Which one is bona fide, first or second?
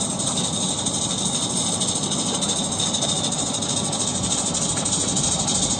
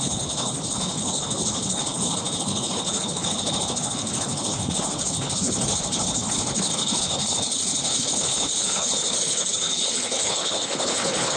first